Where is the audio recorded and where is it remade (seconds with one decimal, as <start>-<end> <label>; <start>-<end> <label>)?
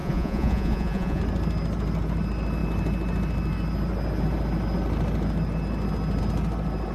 0.0-1.2 remade; 1.2-6.9 recorded